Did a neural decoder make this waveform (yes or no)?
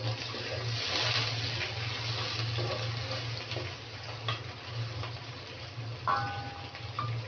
no